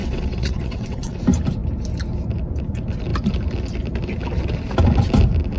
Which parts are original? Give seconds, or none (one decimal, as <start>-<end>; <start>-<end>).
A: 1.2-5.6